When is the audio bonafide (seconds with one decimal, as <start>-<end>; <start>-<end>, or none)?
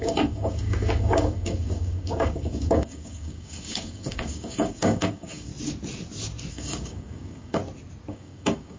5.5-6.5; 7.6-8.1